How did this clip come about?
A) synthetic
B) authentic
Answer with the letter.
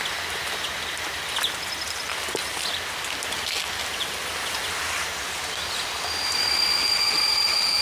B